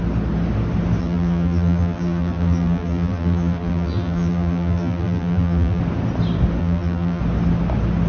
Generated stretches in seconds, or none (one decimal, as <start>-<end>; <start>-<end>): 1.0-5.8; 6.6-7.2